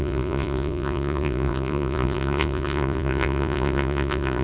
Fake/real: fake